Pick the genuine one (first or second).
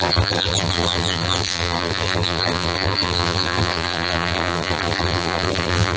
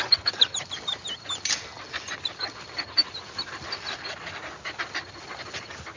second